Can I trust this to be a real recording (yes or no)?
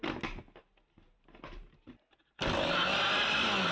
yes